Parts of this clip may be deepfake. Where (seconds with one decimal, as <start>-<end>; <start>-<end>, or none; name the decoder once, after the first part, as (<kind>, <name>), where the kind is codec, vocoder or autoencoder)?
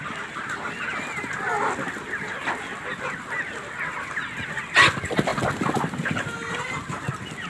none